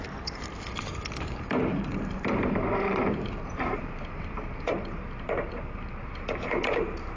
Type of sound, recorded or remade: remade